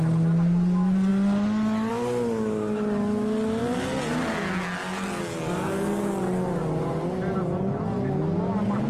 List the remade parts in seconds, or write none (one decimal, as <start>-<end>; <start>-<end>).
none